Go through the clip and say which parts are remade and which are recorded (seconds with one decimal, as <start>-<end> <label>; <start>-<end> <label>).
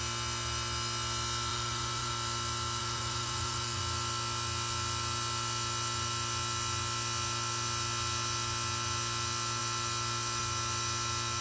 0.0-1.5 recorded; 1.5-2.1 remade; 2.1-2.8 recorded; 2.8-3.8 remade; 3.8-11.4 recorded